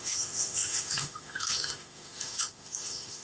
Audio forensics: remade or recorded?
remade